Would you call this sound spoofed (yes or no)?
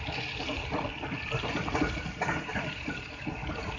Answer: no